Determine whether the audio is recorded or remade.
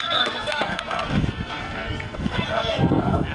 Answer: remade